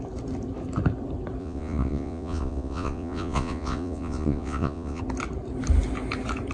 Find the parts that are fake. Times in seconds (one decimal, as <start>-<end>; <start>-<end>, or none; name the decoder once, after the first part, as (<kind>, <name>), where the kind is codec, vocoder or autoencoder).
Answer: 1.4-5.0 (vocoder, Vocos)